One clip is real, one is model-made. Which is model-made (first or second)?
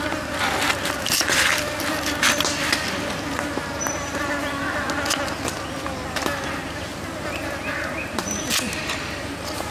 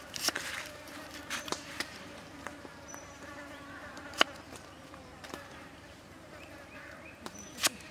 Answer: second